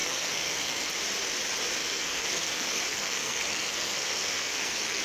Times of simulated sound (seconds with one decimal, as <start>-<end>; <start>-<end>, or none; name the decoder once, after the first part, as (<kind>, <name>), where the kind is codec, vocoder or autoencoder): 0.0-0.9 (codec, SNAC); 1.8-5.0